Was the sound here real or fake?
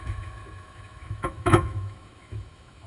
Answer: fake